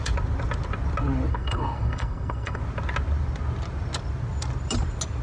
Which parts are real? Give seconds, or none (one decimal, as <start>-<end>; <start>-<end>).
0.0-1.3; 2.6-5.2